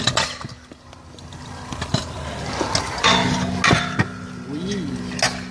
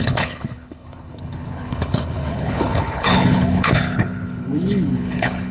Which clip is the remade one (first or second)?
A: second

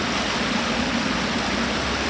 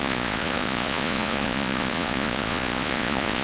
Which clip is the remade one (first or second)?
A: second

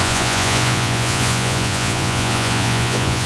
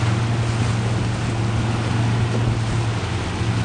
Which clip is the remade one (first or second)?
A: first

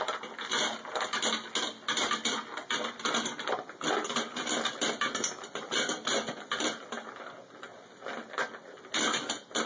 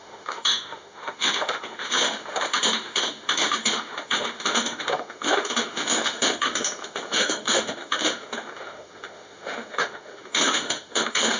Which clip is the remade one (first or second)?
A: second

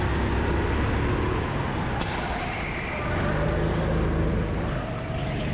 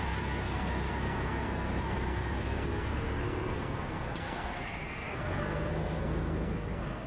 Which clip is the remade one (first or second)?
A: second